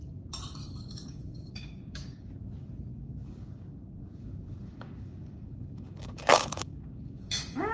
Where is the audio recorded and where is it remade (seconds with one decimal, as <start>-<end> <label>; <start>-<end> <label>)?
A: 0.0-0.6 recorded; 0.6-2.3 remade; 2.3-2.9 recorded; 2.9-7.7 remade